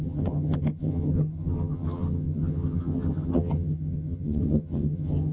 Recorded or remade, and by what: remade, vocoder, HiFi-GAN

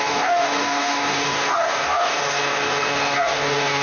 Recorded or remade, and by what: remade, codec, DAC